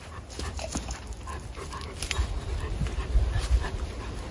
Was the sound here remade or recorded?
recorded